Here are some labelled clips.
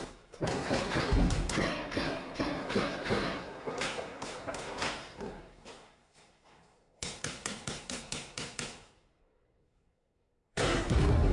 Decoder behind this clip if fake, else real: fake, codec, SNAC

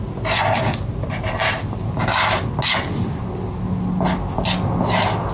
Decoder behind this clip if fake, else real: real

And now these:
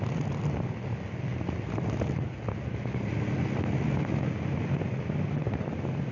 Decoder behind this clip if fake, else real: real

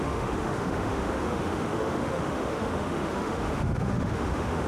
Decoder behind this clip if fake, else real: fake, autoencoder, DAC-VAE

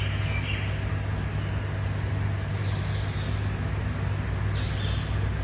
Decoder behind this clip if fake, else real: real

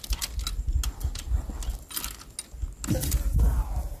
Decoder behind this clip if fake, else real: real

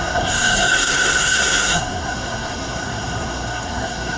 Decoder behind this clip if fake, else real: fake, codec, SNAC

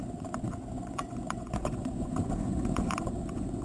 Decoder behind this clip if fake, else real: fake, vocoder, Vocos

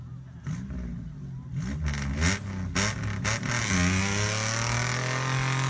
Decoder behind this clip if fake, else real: real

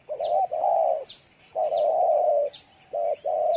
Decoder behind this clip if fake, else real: real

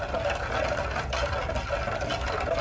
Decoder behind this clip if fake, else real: real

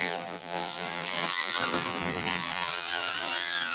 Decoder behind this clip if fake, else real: fake, vocoder, BigVGAN v2